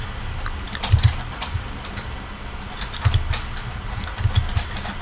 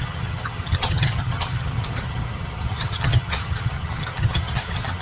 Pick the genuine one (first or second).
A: first